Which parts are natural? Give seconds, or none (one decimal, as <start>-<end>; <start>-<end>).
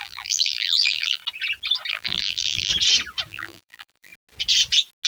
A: 1.2-1.9; 2.7-3.3; 4.1-5.1